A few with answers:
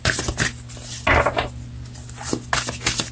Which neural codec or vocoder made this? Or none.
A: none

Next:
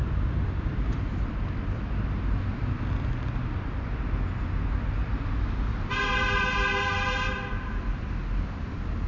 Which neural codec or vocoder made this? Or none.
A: none